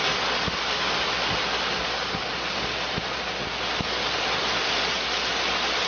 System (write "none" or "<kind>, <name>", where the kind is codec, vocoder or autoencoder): none